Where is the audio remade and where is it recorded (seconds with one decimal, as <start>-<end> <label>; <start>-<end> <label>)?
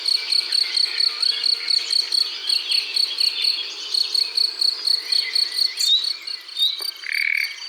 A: 0.0-7.7 recorded